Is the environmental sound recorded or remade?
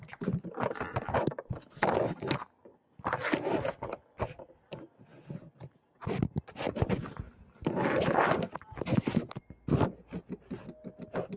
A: recorded